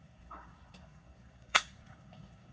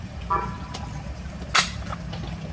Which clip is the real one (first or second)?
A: second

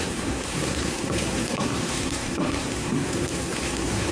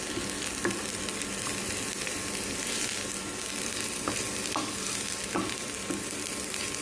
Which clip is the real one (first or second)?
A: second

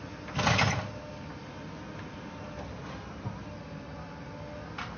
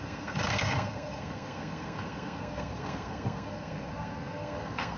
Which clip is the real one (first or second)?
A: first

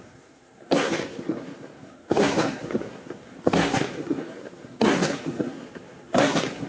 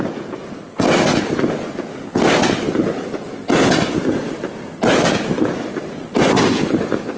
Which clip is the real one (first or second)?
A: second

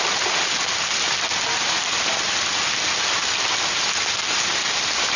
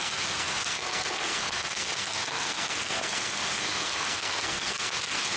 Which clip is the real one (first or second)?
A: first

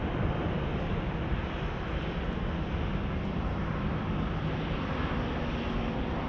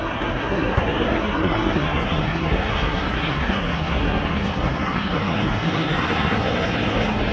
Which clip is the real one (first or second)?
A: first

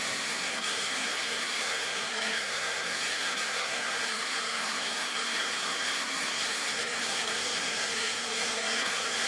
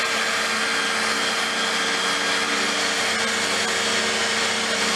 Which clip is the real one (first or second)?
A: second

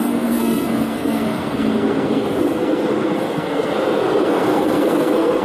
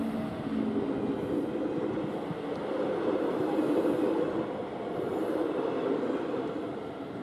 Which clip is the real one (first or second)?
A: second